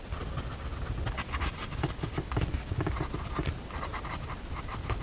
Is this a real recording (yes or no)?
yes